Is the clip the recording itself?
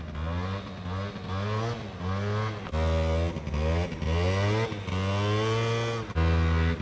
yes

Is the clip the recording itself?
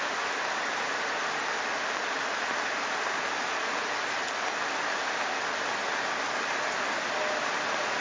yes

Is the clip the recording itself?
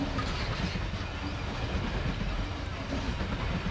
yes